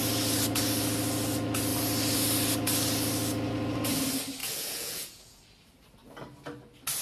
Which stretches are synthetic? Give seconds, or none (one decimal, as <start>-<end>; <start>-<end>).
4.4-5.4